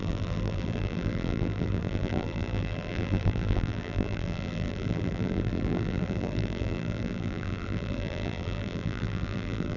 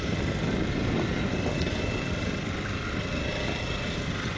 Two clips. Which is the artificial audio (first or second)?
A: first